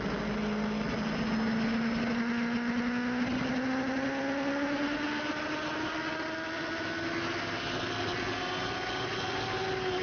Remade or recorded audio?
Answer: recorded